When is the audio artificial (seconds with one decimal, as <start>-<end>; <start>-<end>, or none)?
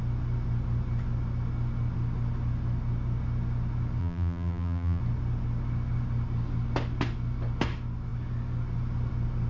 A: 4.0-5.0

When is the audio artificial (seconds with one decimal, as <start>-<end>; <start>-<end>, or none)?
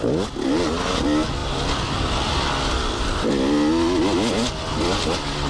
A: none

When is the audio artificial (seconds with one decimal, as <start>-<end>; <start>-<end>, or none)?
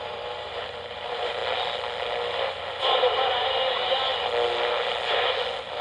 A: 0.0-1.4; 2.8-4.1